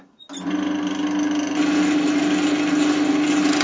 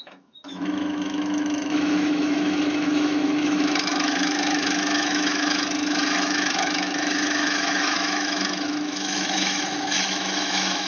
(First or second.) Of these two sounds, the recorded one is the first